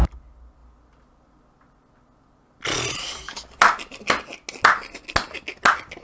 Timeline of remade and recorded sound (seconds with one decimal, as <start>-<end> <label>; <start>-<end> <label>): 0.0-6.0 recorded